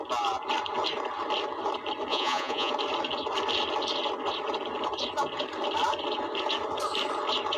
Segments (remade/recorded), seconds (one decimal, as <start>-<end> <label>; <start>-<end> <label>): 0.0-2.1 recorded; 2.1-2.7 remade; 2.7-7.6 recorded